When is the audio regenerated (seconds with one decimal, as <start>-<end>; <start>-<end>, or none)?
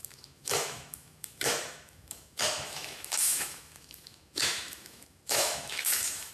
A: 0.0-6.3